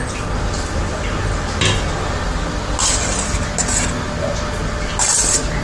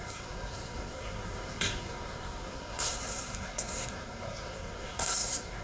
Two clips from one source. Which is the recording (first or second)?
first